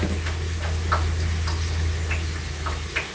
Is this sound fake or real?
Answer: real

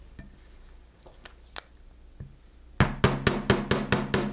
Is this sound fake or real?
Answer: real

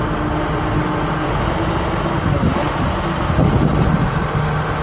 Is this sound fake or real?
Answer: real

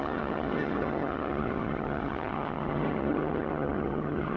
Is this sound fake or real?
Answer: fake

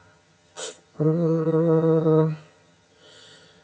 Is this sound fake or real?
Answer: fake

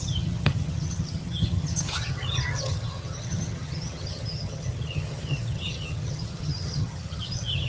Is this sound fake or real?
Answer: fake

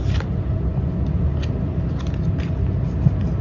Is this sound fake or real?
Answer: real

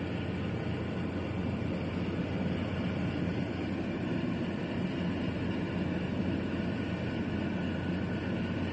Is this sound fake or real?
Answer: real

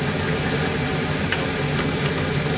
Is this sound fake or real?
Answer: real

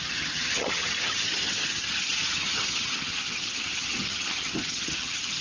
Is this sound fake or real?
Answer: fake